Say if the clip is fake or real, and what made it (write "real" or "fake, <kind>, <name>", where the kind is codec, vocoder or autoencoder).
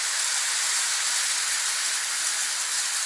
real